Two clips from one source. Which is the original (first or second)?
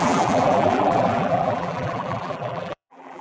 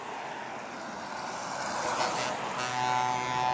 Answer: second